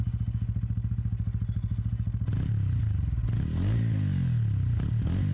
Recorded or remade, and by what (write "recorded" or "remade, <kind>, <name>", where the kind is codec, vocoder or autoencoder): recorded